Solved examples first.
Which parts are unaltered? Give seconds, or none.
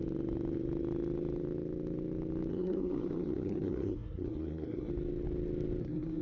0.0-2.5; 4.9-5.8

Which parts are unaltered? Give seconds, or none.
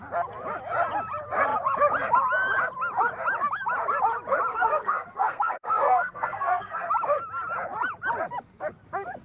0.0-4.5; 6.9-9.2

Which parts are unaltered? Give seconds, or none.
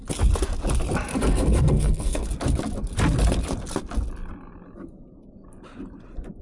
0.0-1.1; 2.3-6.4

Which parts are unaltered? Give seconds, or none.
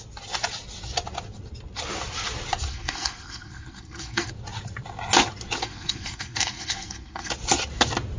0.0-2.7; 4.3-5.6; 7.3-8.2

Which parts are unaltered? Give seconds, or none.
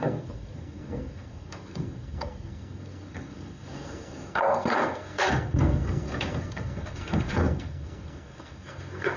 none